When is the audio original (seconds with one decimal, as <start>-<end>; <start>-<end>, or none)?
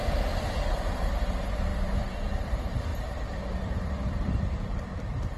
0.0-0.5